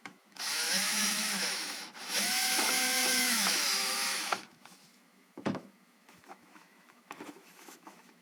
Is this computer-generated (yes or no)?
yes